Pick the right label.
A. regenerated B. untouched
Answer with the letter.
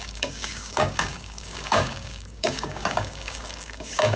A